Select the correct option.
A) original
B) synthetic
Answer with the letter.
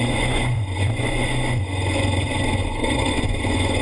B